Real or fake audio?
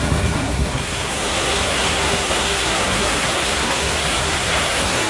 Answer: fake